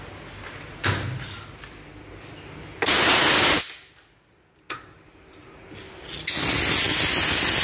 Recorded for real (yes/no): yes